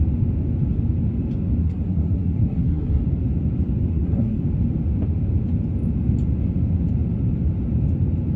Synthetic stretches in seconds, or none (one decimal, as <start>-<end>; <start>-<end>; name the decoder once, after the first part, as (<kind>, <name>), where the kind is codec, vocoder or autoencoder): 1.6-3.0 (codec, SNAC); 3.9-4.4